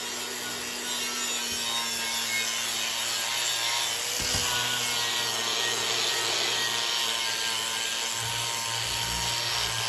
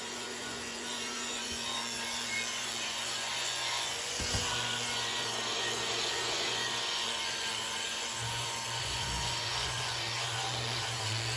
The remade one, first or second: second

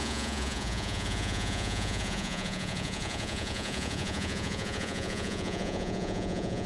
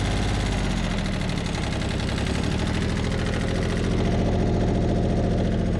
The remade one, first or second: first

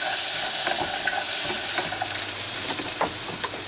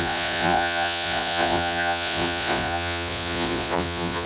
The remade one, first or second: second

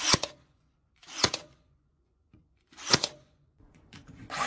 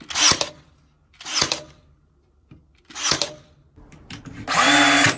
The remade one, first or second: first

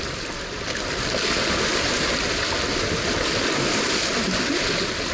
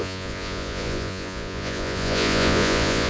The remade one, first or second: second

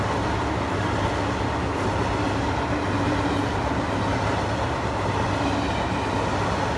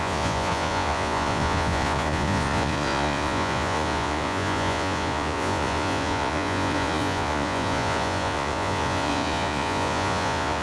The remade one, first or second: second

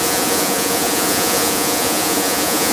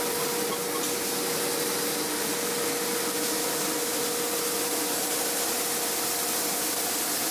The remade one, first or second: first